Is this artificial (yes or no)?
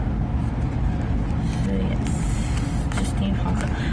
no